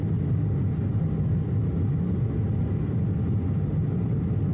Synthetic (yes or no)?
no